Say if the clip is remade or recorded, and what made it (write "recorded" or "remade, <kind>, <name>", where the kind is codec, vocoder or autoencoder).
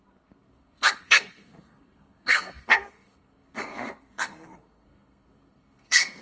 remade, codec, SNAC